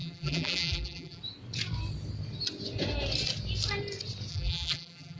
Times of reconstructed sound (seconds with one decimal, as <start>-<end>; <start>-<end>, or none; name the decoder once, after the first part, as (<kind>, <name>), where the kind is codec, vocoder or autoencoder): 0.0-1.2 (vocoder, BigVGAN v2); 4.3-5.2